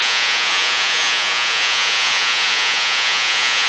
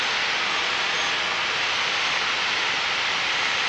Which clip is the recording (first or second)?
second